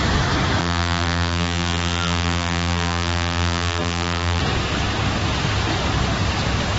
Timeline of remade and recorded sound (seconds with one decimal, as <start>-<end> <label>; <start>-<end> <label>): 0.0-0.6 recorded; 0.6-4.4 remade; 4.4-6.8 recorded